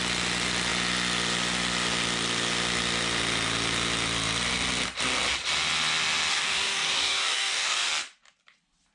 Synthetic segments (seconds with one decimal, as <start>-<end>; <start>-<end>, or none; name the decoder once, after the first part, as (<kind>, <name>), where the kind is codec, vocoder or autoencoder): 6.3-7.9 (codec, DAC)